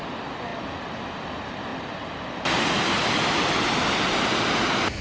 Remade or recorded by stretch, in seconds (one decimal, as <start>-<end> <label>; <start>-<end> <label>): 0.0-5.0 recorded